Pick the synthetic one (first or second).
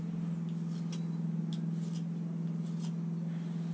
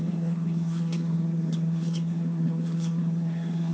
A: second